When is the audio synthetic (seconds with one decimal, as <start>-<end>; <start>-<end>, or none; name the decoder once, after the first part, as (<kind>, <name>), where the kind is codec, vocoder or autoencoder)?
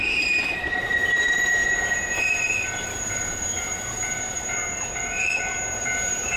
0.0-6.4 (vocoder, BigVGAN v2)